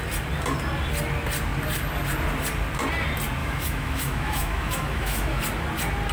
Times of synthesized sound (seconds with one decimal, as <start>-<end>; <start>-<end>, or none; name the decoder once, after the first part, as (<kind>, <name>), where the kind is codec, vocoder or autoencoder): 3.4-5.4 (autoencoder, DAC-VAE)